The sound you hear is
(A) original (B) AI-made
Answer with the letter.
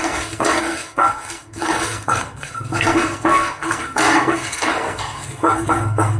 B